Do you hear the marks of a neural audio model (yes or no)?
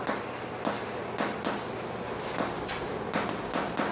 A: no